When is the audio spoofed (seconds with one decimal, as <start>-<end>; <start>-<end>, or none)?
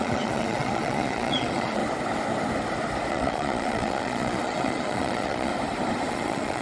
0.0-1.8; 3.1-5.5; 6.1-6.6